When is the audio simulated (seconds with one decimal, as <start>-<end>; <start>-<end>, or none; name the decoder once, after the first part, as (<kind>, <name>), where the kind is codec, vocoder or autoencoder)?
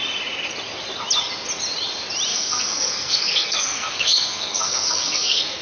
2.3-5.6 (codec, SNAC)